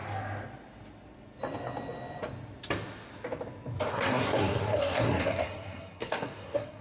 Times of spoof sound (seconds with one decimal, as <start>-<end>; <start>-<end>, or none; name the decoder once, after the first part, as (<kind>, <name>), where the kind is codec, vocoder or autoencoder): 3.9-6.8 (codec, SNAC)